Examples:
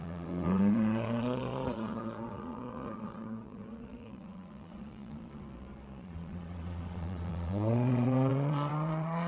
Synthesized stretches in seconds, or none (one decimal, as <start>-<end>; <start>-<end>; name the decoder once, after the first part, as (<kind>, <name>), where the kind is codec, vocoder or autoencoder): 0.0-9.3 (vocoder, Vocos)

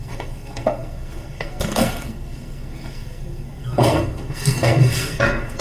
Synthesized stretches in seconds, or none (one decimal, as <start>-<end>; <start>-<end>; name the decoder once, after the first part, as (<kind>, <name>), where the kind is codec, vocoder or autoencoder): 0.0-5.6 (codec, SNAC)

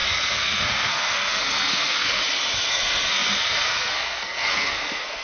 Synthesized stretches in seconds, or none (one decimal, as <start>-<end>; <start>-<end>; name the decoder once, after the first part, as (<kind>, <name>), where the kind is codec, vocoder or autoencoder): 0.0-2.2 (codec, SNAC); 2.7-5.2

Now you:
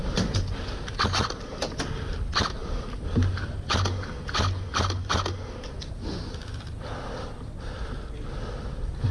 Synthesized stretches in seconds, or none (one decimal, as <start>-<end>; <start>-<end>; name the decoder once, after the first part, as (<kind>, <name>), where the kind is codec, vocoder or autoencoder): none

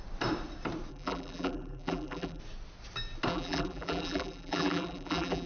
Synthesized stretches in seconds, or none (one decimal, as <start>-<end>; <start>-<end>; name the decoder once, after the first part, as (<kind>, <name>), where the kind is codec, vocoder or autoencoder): 0.9-2.4 (vocoder, BigVGAN v2); 3.3-5.5

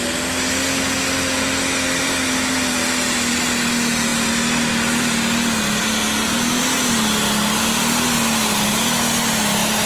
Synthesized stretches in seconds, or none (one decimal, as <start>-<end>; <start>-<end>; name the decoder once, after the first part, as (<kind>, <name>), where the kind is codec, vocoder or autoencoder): none

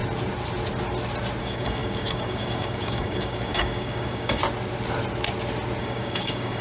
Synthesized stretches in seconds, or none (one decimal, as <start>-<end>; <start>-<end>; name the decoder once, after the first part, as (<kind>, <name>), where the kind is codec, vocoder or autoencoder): 1.4-4.4 (codec, DAC); 5.8-6.6